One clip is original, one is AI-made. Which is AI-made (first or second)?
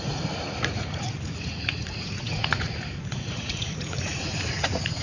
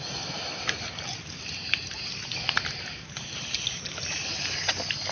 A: first